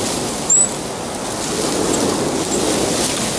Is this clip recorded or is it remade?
recorded